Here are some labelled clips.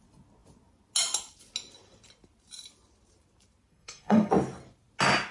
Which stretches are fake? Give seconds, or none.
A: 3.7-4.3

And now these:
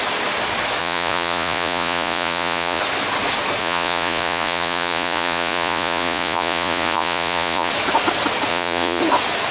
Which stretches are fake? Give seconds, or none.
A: 0.8-2.8; 3.6-7.7; 8.5-9.0

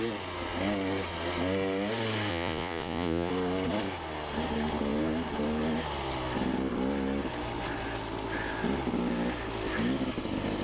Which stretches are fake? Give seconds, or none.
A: 2.3-3.3

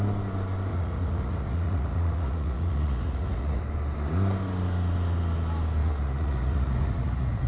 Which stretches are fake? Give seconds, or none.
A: 0.7-3.6; 5.8-7.5